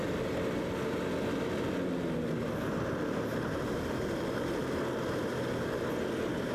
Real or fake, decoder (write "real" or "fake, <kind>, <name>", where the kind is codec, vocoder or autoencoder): real